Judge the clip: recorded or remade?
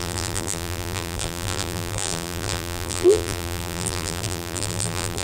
remade